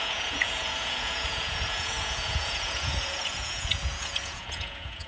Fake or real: fake